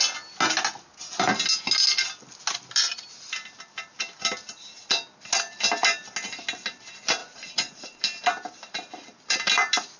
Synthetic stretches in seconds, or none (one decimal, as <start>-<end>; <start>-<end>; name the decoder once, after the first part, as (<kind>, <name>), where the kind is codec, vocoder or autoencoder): 7.2-8.0 (vocoder, Vocos)